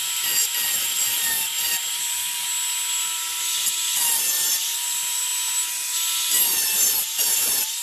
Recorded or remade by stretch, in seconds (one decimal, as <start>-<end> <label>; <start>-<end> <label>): 0.0-2.4 remade; 2.4-3.9 recorded; 3.9-5.3 remade; 5.3-6.4 recorded; 6.4-7.8 remade

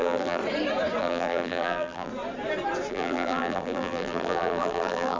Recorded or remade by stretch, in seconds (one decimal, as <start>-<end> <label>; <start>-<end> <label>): 0.0-0.4 remade; 0.4-1.0 recorded; 1.0-2.1 remade; 2.1-2.9 recorded; 2.9-5.2 remade